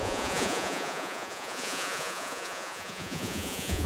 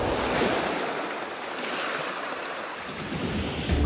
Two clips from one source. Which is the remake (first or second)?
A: first